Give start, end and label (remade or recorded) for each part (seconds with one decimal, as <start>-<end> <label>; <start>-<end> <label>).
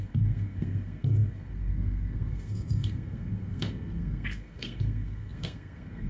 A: 0.0-6.1 remade